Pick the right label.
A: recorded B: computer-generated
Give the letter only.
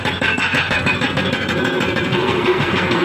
B